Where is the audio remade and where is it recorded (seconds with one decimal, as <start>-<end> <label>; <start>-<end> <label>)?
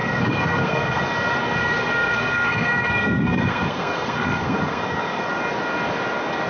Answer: 0.0-1.0 remade; 1.0-1.6 recorded; 1.6-5.3 remade; 5.3-6.5 recorded